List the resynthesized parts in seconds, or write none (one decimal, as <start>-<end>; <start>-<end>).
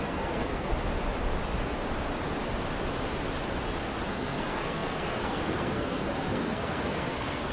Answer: 0.0-0.7; 4.1-7.5